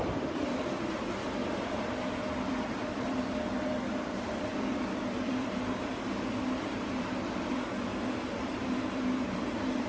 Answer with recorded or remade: remade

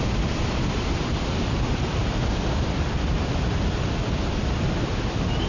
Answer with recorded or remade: remade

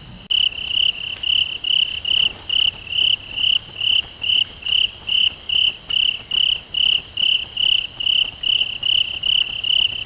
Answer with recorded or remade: recorded